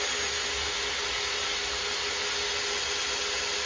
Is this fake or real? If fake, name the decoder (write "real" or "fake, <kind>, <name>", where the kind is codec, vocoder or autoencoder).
real